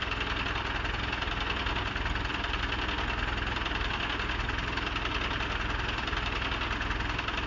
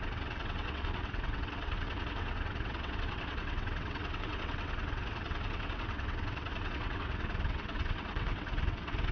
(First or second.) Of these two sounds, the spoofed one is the second